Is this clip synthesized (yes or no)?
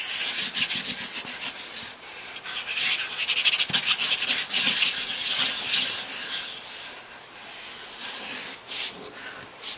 no